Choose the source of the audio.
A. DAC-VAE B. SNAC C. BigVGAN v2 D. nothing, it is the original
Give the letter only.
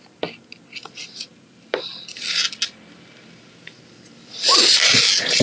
D